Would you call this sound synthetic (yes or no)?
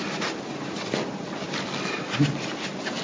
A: no